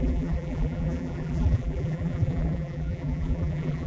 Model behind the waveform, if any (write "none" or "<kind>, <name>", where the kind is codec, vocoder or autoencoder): vocoder, BigVGAN v2